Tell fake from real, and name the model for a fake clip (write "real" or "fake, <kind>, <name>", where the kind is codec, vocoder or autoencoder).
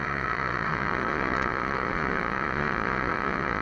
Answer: fake, vocoder, Vocos